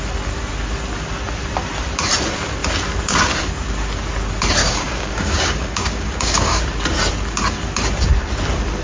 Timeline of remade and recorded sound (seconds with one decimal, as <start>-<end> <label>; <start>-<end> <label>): 0.0-4.6 recorded; 4.6-6.6 remade; 6.6-8.8 recorded

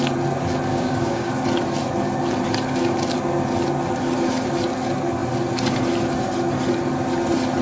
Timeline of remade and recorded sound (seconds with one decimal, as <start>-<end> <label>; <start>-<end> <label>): 0.0-0.7 recorded; 0.7-1.3 remade; 1.3-7.6 recorded

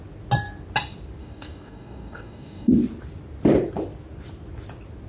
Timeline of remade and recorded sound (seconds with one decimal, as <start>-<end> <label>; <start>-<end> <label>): 0.0-1.2 recorded; 1.2-2.7 remade; 2.7-5.1 recorded